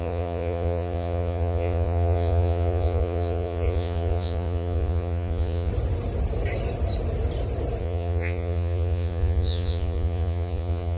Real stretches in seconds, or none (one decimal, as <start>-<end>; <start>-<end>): 5.7-7.8